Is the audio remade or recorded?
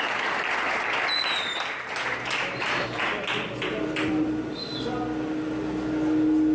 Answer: recorded